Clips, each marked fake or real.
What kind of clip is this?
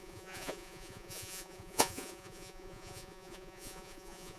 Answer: fake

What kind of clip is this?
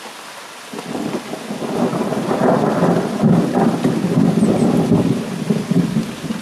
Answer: real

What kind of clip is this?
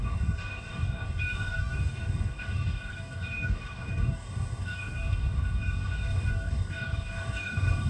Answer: fake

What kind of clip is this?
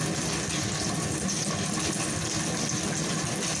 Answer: real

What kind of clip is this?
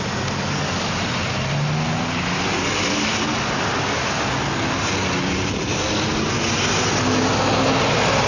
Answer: real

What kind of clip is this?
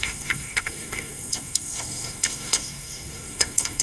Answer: fake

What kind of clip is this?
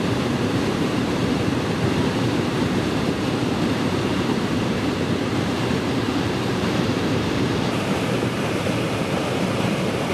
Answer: fake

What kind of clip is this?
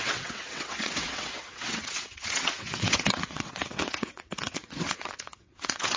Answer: fake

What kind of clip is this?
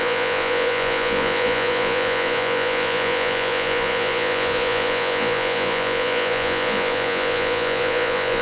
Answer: fake